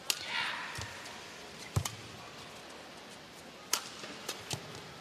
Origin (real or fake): real